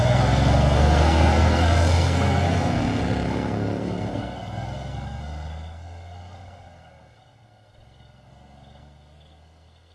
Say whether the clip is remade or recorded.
remade